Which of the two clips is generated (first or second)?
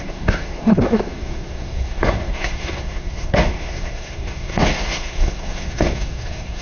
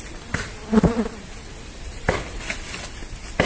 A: first